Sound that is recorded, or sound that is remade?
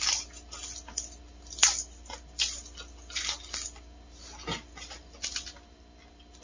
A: recorded